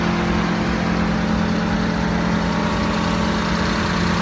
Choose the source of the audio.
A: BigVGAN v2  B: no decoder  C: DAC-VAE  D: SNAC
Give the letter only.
B